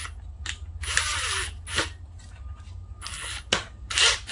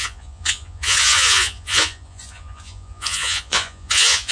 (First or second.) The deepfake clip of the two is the second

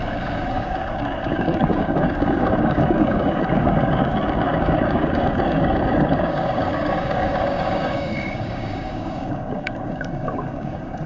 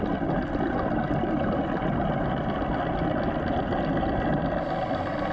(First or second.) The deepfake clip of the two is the first